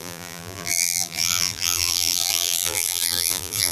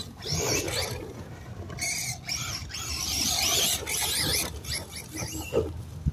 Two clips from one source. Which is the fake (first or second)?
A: first